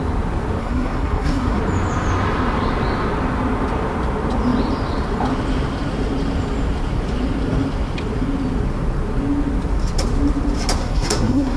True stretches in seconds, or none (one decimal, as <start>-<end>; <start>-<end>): 0.0-0.6; 1.6-10.8